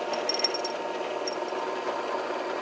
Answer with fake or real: real